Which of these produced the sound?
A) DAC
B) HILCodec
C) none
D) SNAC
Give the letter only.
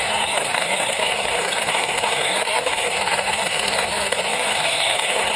D